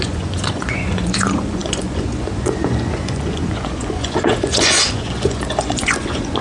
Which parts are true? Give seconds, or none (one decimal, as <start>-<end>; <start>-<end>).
none